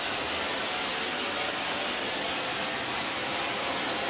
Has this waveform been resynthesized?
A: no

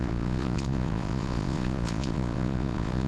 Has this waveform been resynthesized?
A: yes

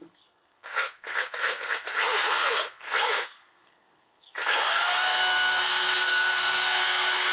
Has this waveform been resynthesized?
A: yes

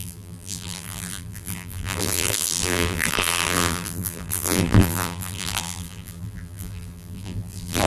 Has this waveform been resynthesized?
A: yes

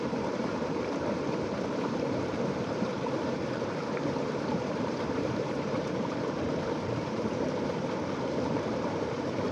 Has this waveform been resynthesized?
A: yes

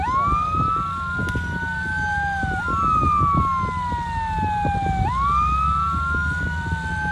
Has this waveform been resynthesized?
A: no